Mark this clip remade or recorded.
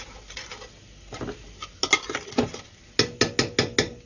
recorded